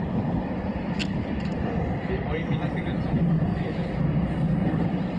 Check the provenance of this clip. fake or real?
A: fake